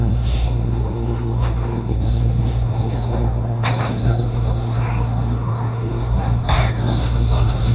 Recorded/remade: remade